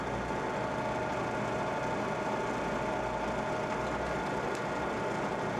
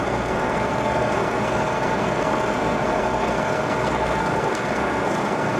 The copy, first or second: second